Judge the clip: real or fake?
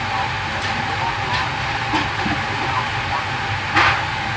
real